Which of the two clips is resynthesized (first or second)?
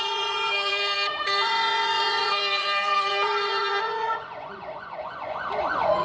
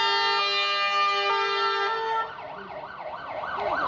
first